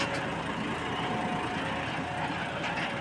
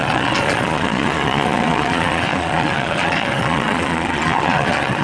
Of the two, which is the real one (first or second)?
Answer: first